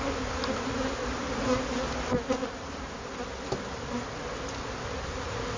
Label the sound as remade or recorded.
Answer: recorded